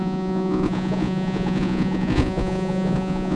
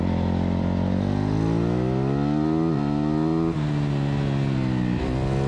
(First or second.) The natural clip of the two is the second